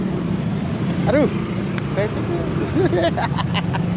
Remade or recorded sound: recorded